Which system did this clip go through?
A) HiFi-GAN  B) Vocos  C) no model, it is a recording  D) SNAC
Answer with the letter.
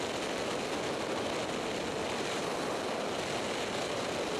C